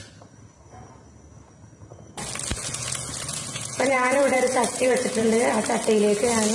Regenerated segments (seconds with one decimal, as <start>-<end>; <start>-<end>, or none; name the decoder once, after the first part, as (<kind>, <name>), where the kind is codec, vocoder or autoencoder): 2.5-5.5 (vocoder, Vocos)